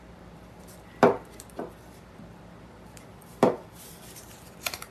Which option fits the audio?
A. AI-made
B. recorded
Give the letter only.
A